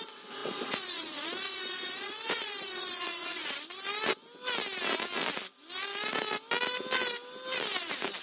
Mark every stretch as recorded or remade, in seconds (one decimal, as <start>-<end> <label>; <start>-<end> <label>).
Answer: 0.0-3.4 remade; 3.4-8.2 recorded